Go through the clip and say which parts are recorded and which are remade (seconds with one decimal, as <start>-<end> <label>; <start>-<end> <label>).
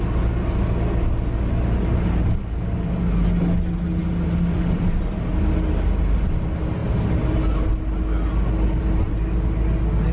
0.0-10.1 recorded